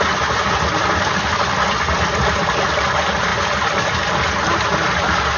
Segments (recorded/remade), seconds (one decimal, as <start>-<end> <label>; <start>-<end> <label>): 0.0-5.4 recorded